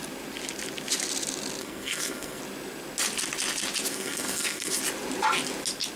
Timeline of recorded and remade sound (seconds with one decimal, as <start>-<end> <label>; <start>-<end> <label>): 0.0-1.6 recorded; 1.6-2.4 remade; 2.4-3.9 recorded; 3.9-4.8 remade; 4.8-6.0 recorded